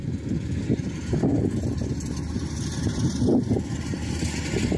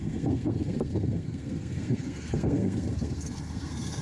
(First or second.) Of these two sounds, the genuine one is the first